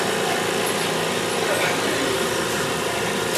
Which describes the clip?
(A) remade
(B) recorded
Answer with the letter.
B